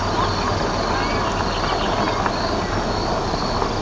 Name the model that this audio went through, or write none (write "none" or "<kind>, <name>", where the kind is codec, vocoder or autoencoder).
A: none